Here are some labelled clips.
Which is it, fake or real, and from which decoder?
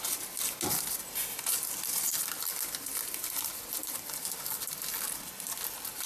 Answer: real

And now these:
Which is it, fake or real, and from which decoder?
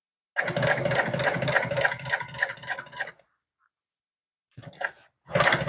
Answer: real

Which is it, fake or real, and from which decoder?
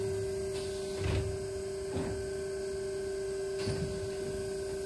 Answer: real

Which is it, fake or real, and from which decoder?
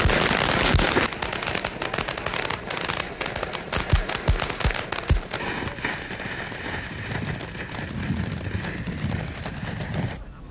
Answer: real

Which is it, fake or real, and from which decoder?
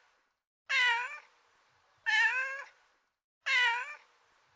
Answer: real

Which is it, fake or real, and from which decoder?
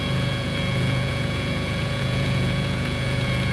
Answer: fake, vocoder, Vocos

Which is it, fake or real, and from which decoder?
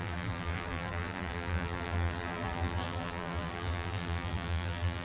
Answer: fake, vocoder, BigVGAN v2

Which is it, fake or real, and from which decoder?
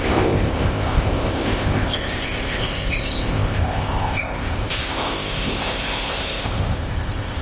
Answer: fake, codec, ZipCodec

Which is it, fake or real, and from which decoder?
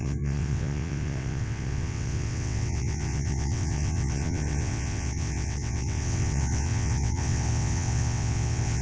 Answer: fake, vocoder, WaveNeXt